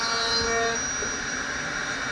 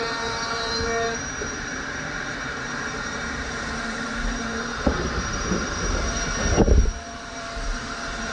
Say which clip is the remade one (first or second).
second